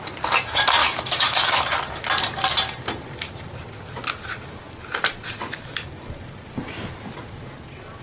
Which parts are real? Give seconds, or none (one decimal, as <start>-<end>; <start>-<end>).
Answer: 0.0-0.8; 1.6-8.0